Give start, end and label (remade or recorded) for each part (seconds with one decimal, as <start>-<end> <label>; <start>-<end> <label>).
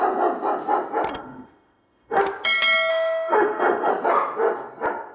0.0-1.1 recorded; 1.1-2.2 remade; 2.2-2.9 recorded; 2.9-3.9 remade; 3.9-5.1 recorded